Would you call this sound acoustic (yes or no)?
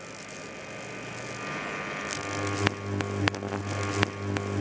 yes